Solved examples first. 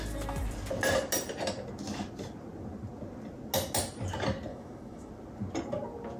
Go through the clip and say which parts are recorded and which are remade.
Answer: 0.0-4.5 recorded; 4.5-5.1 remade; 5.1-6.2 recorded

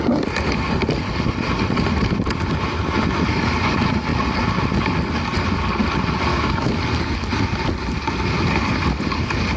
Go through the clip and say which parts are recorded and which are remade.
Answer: 0.0-6.3 recorded; 6.3-6.8 remade; 6.8-9.6 recorded

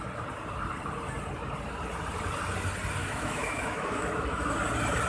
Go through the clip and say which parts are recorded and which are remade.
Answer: 0.0-3.0 recorded; 3.0-4.5 remade; 4.5-5.1 recorded

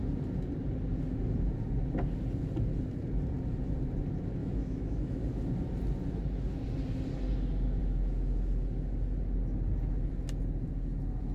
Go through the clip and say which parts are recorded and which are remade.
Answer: 0.0-4.4 recorded; 4.4-5.2 remade; 5.2-11.3 recorded

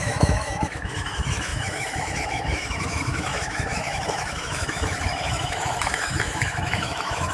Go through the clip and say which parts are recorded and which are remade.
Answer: 0.0-7.3 remade

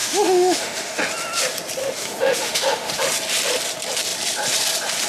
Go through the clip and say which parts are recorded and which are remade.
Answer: 0.0-1.0 remade; 1.0-1.8 recorded; 1.8-2.9 remade; 2.9-5.1 recorded